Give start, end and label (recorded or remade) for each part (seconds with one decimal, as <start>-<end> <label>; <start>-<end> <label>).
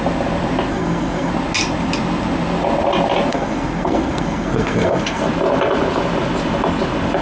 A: 0.0-0.7 recorded; 0.7-1.3 remade; 1.3-3.3 recorded; 3.3-5.2 remade; 5.2-7.2 recorded